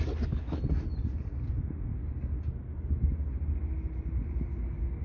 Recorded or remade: recorded